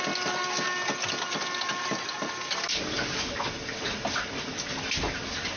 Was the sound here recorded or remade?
recorded